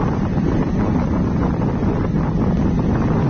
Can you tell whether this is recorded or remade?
recorded